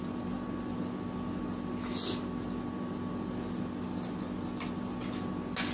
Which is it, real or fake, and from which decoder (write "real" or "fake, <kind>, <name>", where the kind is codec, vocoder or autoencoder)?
real